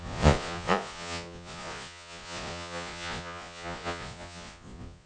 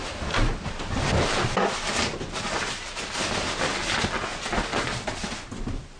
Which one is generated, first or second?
first